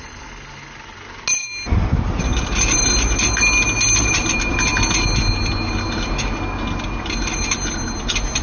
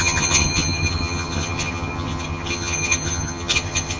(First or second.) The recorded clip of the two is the first